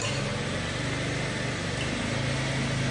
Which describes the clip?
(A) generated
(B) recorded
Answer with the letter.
B